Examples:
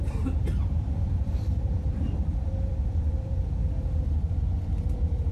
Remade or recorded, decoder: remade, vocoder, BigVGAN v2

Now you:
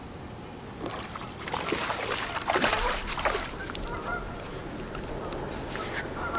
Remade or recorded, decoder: remade, vocoder, BigVGAN v2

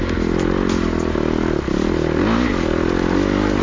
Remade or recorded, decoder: recorded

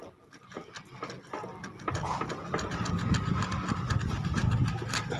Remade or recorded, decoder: recorded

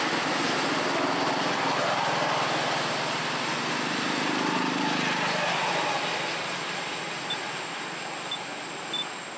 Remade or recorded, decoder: recorded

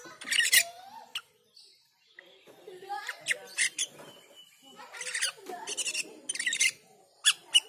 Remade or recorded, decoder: recorded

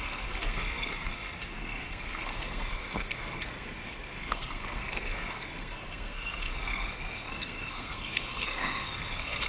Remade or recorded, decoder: remade, codec, SNAC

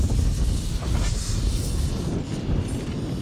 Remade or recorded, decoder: recorded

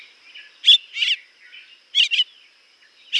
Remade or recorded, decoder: recorded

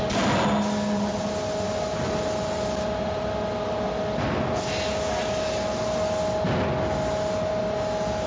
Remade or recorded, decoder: recorded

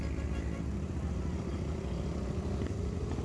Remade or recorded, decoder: recorded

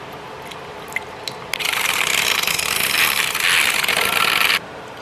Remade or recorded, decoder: recorded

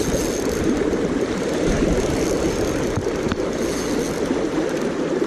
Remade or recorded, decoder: recorded